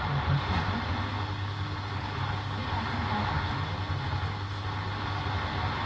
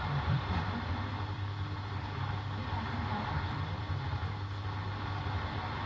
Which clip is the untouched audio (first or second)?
first